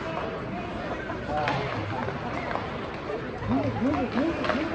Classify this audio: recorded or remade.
recorded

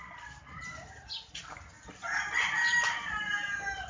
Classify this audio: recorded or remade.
recorded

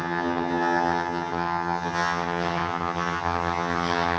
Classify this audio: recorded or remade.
remade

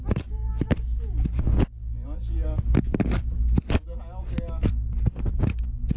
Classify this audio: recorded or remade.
recorded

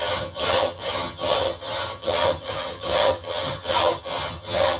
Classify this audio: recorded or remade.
remade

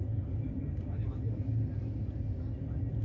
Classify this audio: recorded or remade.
recorded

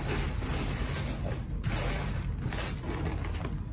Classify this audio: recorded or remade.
recorded